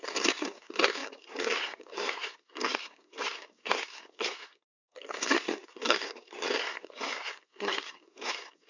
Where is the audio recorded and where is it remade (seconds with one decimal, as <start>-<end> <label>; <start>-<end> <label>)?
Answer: 0.0-8.7 remade